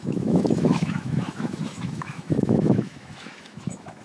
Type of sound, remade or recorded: remade